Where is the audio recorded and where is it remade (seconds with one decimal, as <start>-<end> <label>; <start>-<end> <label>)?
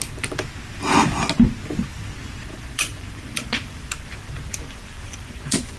0.0-2.2 recorded; 2.2-3.9 remade; 3.9-4.6 recorded; 4.6-5.8 remade